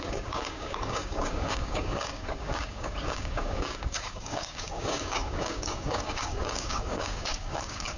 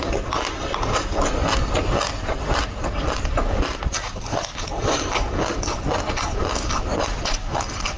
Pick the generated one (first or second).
first